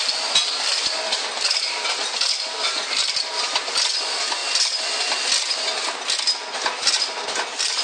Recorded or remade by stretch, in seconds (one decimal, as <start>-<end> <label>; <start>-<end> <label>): 0.0-4.4 remade; 4.4-7.0 recorded; 7.0-7.8 remade